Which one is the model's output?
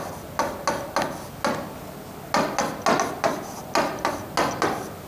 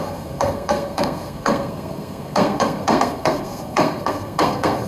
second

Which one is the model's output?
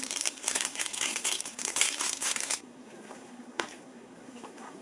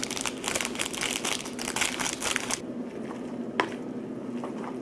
first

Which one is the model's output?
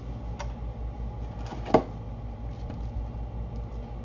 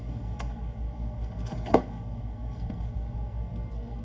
second